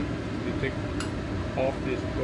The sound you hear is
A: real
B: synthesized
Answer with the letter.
A